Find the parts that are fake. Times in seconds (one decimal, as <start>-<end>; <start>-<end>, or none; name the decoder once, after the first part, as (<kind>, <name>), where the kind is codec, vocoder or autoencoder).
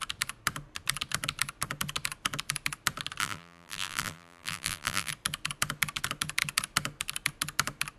3.2-5.1 (vocoder, BigVGAN v2)